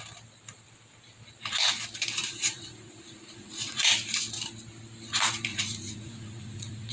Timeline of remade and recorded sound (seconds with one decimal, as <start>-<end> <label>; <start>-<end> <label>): 0.0-2.2 recorded; 2.2-3.9 remade; 3.9-5.5 recorded; 5.5-6.9 remade